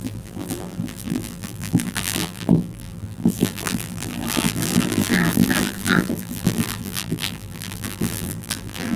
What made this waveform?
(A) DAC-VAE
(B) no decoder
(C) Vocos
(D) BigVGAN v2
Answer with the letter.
D